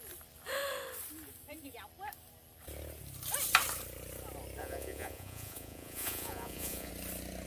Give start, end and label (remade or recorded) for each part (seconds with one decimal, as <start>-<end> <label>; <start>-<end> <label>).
0.0-4.6 recorded; 4.6-6.9 remade; 6.9-7.5 recorded